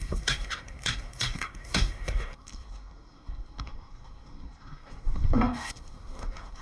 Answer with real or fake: fake